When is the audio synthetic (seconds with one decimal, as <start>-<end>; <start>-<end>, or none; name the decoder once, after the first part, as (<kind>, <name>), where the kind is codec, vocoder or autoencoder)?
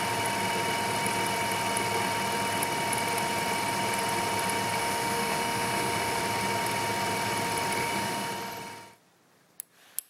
4.8-6.2 (autoencoder, DAC-VAE); 7.8-8.3